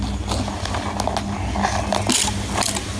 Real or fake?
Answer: real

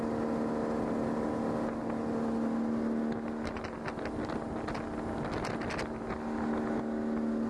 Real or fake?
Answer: real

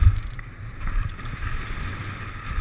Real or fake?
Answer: real